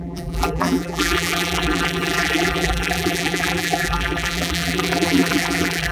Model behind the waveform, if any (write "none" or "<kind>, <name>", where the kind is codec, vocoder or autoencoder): vocoder, BigVGAN v2